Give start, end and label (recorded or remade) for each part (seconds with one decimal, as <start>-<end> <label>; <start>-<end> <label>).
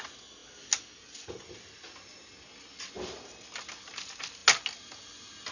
0.0-5.5 recorded